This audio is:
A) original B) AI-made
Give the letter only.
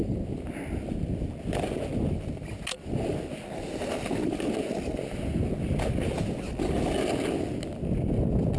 A